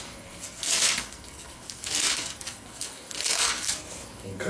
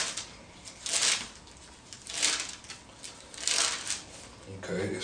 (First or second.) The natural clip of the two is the second